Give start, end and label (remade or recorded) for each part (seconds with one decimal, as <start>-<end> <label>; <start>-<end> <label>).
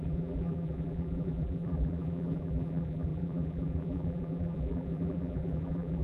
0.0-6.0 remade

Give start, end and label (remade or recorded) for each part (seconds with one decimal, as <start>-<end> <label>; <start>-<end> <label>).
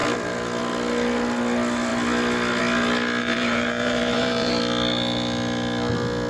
0.0-3.2 recorded; 3.2-4.6 remade; 4.6-6.3 recorded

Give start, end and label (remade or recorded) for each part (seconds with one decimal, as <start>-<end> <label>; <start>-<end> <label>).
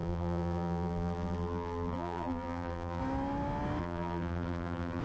0.0-3.0 remade; 3.0-3.8 recorded; 3.8-5.0 remade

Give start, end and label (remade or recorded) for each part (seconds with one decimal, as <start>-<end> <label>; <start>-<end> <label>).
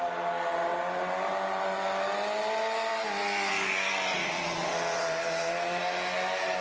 0.0-0.7 recorded; 0.7-1.6 remade; 1.6-4.2 recorded; 4.2-5.5 remade; 5.5-6.6 recorded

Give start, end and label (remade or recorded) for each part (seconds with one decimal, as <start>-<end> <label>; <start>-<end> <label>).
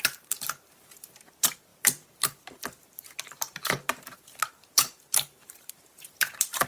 0.0-6.7 remade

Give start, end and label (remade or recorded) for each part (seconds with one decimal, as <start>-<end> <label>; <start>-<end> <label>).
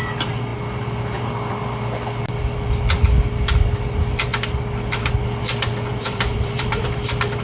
0.0-5.9 recorded; 5.9-6.9 remade; 6.9-7.4 recorded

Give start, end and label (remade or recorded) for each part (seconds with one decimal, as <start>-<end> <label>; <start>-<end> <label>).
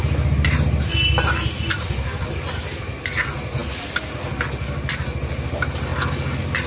0.0-6.7 recorded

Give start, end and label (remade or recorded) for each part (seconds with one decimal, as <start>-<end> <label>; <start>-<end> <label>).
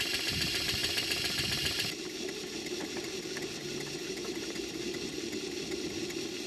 0.0-6.5 recorded